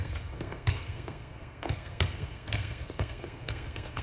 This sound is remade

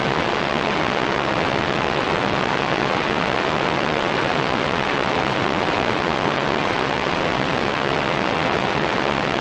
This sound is remade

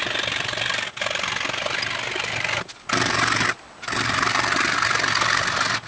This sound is recorded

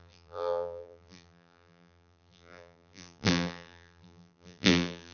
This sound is remade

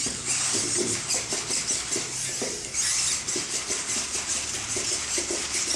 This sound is recorded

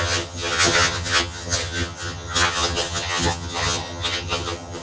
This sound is remade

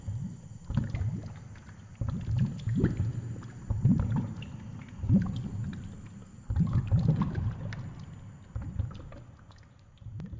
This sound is recorded